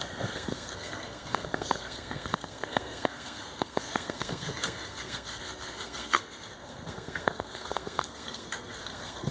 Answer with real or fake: fake